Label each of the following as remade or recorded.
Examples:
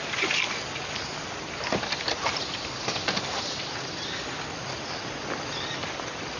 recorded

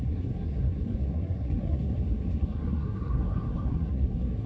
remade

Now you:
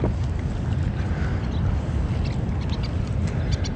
recorded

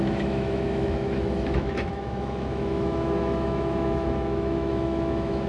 remade